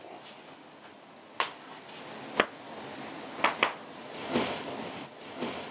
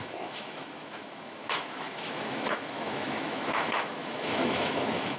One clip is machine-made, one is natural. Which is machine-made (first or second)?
second